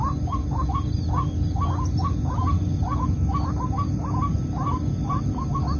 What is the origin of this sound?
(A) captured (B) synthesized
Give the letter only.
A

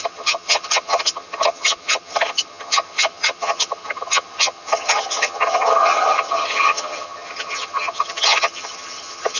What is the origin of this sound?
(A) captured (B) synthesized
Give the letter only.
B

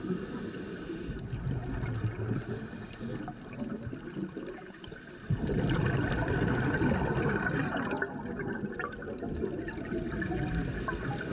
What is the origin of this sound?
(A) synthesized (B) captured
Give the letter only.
B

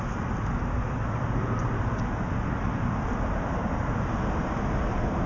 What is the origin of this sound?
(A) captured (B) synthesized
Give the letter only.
A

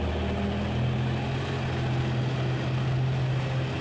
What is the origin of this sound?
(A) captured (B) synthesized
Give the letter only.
A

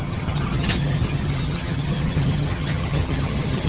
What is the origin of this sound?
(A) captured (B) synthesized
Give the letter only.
B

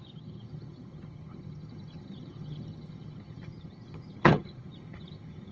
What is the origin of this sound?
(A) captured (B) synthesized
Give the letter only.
B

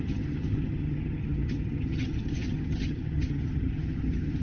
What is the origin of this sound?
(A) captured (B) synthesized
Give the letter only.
B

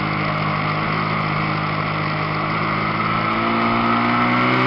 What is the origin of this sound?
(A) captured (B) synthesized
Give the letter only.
A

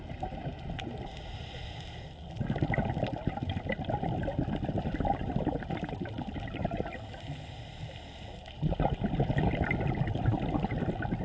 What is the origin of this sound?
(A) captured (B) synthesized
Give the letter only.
A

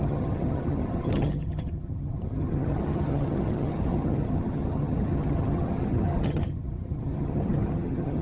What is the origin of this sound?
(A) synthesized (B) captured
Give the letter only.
A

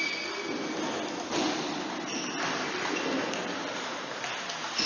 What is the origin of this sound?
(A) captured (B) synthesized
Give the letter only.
A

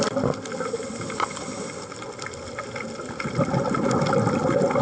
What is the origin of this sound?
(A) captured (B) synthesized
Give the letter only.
A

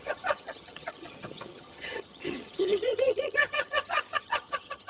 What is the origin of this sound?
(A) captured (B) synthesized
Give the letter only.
B